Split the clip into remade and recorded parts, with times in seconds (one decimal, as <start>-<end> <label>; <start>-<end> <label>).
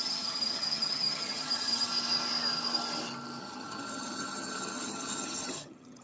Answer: 0.0-1.9 remade; 1.9-3.4 recorded; 3.4-6.0 remade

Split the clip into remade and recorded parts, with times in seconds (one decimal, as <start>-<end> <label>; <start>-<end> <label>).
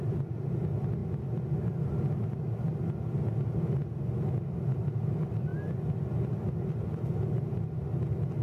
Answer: 0.0-8.4 recorded